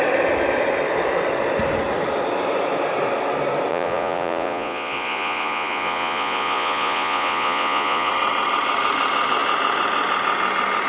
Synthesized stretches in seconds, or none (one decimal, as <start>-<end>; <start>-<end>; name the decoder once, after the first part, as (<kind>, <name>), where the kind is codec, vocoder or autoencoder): 3.7-8.1 (vocoder, Vocos)

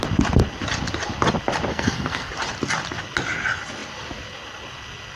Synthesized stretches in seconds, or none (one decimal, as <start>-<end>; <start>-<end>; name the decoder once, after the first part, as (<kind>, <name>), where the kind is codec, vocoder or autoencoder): 1.7-2.3 (codec, SNAC)

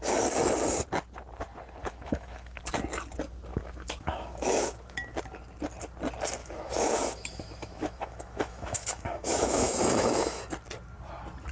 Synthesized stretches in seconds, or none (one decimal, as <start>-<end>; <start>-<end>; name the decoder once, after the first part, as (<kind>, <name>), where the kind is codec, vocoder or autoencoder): 1.8-2.6 (autoencoder, DAC-VAE); 3.5-5.2; 6.4-10.4

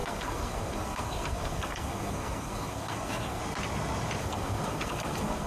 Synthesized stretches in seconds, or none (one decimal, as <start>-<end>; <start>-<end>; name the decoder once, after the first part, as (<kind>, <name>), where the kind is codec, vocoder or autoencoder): 0.0-3.4 (codec, SNAC); 4.2-5.5

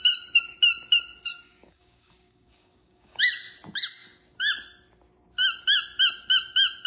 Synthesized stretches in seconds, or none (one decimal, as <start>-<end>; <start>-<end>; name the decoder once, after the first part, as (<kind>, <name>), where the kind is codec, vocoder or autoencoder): 1.3-3.2 (codec, DAC)